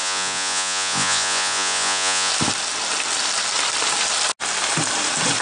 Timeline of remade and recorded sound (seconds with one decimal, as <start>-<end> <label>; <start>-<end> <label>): 0.0-2.3 remade; 2.3-5.4 recorded